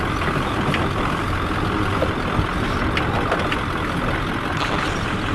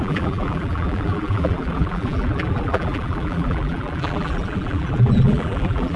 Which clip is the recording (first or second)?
first